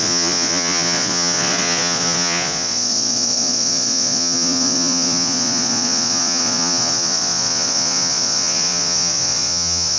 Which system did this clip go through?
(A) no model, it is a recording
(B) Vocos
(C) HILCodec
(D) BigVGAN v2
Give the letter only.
B